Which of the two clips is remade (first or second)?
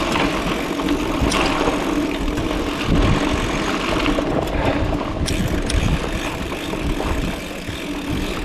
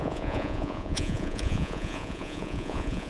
second